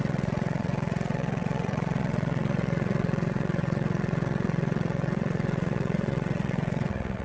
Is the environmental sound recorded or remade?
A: remade